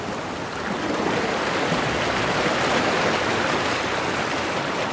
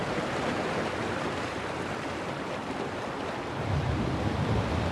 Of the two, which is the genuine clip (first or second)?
first